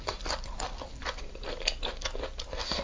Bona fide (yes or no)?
yes